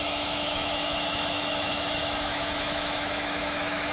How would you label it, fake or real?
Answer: fake